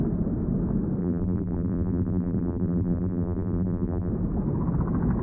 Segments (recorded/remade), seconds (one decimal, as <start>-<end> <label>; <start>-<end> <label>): 0.0-1.0 recorded; 1.0-4.1 remade; 4.1-5.2 recorded